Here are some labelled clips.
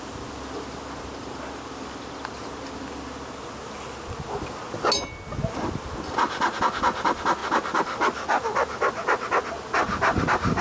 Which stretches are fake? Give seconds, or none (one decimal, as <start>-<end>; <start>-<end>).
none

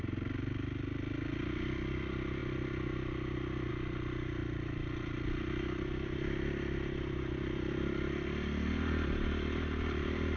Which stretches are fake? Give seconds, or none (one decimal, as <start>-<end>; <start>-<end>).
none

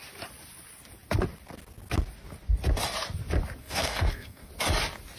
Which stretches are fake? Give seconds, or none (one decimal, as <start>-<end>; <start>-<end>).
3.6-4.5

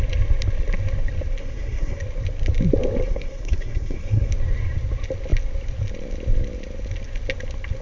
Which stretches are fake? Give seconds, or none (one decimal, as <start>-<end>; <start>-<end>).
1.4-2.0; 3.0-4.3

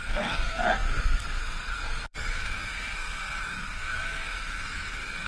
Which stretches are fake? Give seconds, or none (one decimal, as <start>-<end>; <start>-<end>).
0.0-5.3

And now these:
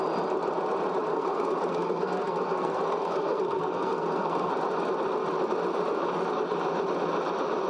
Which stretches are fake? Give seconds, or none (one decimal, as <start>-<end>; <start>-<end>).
1.1-4.5

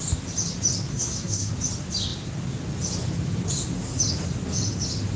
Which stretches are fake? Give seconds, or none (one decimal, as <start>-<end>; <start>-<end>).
0.9-1.5

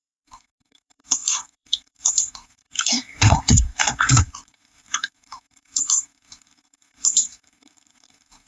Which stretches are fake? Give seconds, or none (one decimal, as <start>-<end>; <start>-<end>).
0.0-8.5